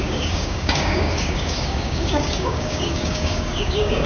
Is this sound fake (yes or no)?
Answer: yes